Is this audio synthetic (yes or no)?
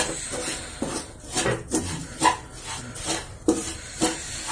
no